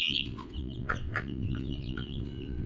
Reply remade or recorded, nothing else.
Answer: remade